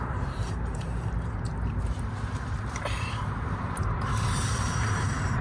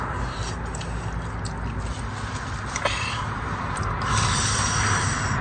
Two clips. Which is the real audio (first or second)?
second